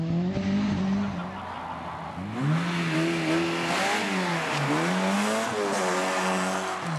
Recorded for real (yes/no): yes